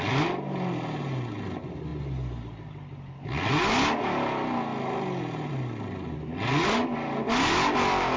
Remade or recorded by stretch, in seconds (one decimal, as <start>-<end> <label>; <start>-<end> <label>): 0.0-8.2 recorded